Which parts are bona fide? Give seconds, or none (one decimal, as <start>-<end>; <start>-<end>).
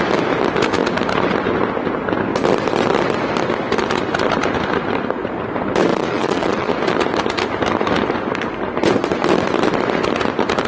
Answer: 0.0-5.9; 6.7-10.7